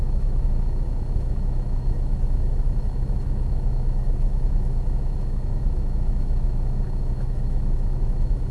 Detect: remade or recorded remade